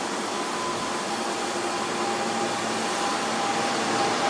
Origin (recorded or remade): recorded